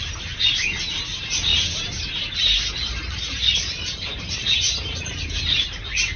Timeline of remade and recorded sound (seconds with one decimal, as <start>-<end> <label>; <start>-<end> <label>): 0.0-6.2 remade

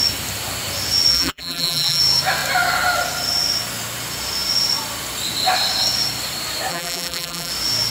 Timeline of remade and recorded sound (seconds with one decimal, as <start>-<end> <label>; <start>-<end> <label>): 0.0-1.1 recorded; 1.1-2.0 remade; 2.0-6.7 recorded; 6.7-7.5 remade; 7.5-7.9 recorded

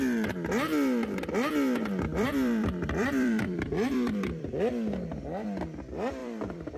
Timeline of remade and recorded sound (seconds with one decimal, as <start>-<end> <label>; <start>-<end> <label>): 0.0-2.1 recorded; 2.1-4.4 remade; 4.4-6.2 recorded; 6.2-6.8 remade

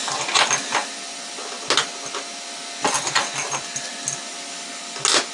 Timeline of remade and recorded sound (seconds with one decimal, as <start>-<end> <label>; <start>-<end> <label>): 0.0-0.8 recorded; 0.8-1.4 remade; 1.4-5.3 recorded

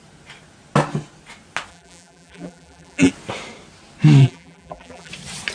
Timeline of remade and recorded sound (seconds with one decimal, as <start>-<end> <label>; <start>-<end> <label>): 0.0-1.7 recorded; 1.7-3.1 remade; 3.1-4.2 recorded; 4.2-5.1 remade; 5.1-5.5 recorded

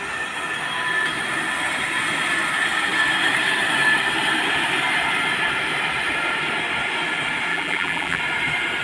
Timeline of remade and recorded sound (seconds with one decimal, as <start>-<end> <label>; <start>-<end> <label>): 0.0-7.5 recorded; 7.5-8.2 remade; 8.2-8.8 recorded

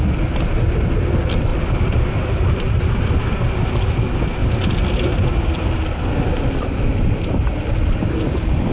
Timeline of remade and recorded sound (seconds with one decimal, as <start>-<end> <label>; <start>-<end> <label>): 0.0-1.5 recorded; 1.5-3.4 remade; 3.4-8.7 recorded